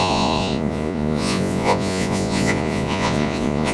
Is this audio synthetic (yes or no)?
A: yes